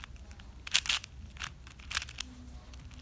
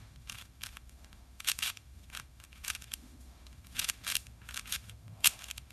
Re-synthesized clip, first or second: second